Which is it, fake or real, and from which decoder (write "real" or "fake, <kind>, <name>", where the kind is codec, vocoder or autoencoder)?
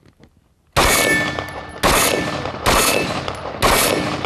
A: real